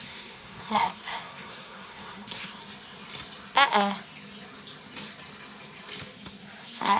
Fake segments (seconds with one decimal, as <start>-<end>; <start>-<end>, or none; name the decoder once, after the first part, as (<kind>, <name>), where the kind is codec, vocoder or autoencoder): 0.0-2.6 (codec, SNAC); 6.6-7.0